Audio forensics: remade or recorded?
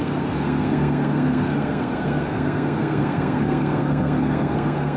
remade